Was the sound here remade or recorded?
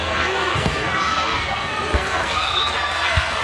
remade